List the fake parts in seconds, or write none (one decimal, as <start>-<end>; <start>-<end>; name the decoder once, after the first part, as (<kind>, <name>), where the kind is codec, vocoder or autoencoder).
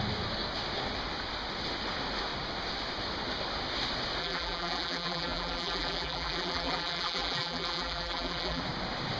4.2-8.6 (vocoder, BigVGAN v2)